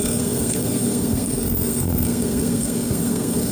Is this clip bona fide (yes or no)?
no